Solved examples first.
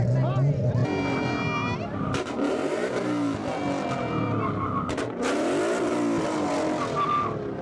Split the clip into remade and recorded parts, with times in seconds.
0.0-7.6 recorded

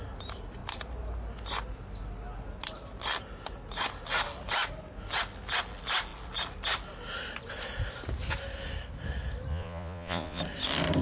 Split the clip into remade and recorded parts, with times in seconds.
0.0-9.5 recorded; 9.5-10.4 remade; 10.4-11.0 recorded